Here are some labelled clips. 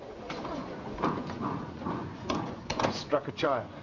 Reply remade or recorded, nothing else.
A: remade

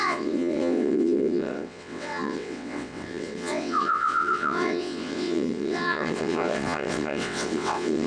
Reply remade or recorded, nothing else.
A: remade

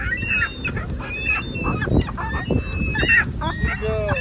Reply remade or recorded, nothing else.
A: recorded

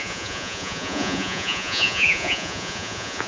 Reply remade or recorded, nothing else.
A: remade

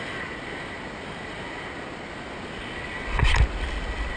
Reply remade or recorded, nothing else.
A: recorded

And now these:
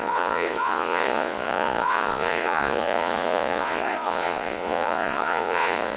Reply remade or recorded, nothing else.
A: remade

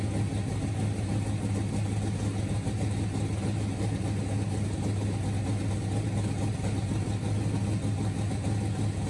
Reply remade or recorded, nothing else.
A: recorded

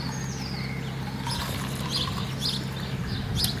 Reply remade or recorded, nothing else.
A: recorded